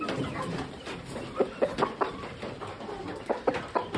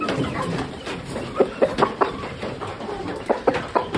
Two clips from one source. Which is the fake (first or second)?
second